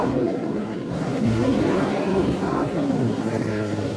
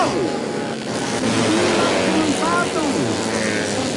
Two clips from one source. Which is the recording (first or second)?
second